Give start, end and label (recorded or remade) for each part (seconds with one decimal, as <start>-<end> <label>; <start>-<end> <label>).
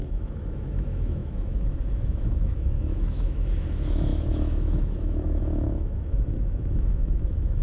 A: 0.0-7.6 remade